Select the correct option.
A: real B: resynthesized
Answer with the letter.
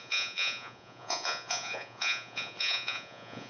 B